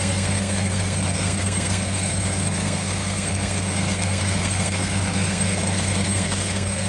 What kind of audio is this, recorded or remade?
remade